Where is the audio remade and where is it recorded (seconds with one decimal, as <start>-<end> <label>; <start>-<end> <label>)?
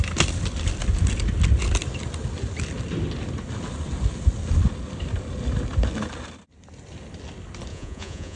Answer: 0.0-7.7 recorded; 7.7-8.4 remade